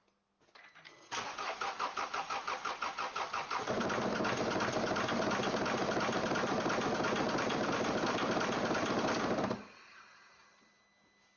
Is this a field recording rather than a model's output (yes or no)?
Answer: yes